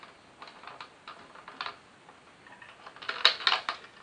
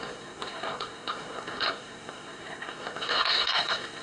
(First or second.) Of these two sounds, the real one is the first